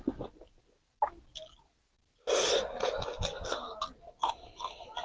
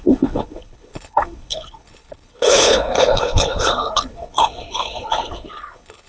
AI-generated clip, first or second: second